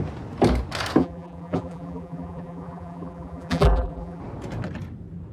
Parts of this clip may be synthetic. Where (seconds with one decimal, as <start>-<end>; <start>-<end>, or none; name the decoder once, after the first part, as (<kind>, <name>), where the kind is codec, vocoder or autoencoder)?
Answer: 1.0-4.2 (vocoder, BigVGAN v2)